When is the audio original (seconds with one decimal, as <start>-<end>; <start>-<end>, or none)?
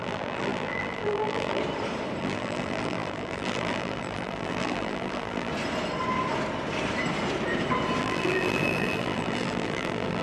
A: 1.6-2.2; 5.5-8.0